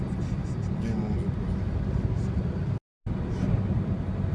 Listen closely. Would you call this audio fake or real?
real